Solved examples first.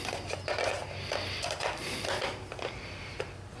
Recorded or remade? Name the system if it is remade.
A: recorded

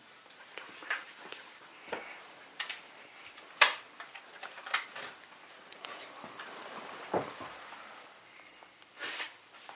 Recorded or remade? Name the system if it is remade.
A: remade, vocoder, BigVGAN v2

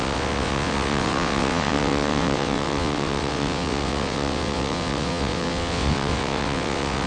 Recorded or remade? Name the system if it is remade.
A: remade, vocoder, WaveNeXt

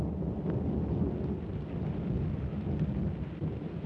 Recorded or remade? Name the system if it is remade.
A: recorded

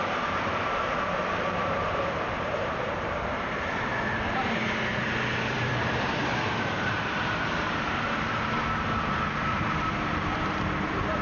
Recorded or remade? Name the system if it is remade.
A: remade, vocoder, BigVGAN v2